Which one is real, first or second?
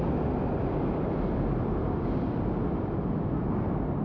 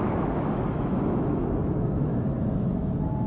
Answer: first